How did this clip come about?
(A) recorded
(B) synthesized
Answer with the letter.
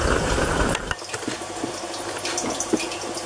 A